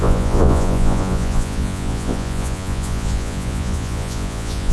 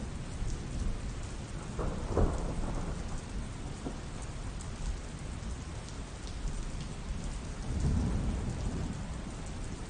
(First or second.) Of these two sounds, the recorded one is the second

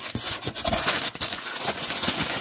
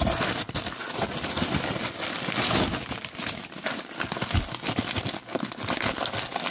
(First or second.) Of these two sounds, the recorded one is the second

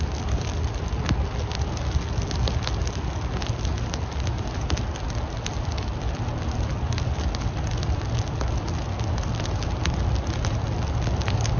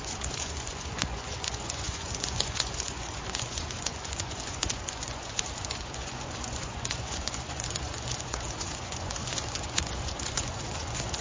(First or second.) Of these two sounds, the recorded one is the first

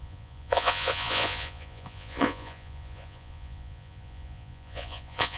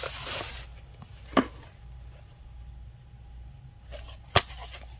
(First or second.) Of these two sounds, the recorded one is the second